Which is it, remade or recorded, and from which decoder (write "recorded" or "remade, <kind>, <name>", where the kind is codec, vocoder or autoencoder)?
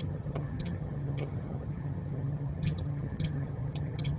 remade, vocoder, HiFi-GAN